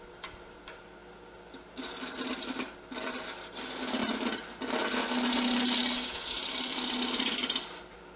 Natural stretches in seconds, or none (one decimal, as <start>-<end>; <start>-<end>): 0.0-8.2